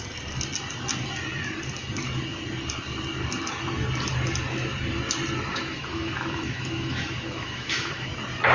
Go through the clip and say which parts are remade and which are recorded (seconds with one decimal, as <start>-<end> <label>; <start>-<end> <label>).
0.0-5.5 recorded; 5.5-8.1 remade; 8.1-8.5 recorded